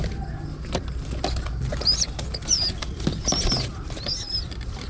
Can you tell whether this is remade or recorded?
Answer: recorded